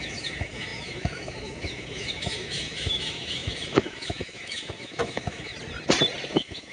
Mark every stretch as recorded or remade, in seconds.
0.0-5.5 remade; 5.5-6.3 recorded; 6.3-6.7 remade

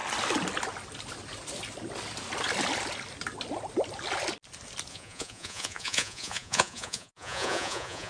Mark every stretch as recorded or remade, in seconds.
0.0-4.9 recorded; 4.9-8.1 remade

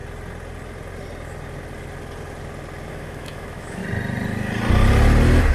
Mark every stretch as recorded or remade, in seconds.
0.0-2.9 recorded; 2.9-3.8 remade; 3.8-5.5 recorded